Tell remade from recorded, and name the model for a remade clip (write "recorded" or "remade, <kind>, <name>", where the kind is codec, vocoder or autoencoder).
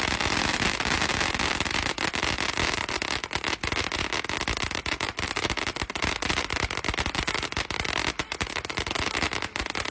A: recorded